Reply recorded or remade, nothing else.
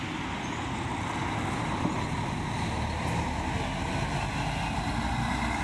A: recorded